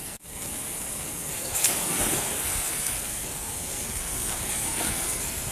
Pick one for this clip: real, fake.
fake